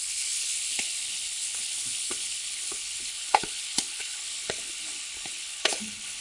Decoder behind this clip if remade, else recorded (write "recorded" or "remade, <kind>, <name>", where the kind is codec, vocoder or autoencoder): remade, codec, HILCodec